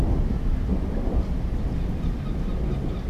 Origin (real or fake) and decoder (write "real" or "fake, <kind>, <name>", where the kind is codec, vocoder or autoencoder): real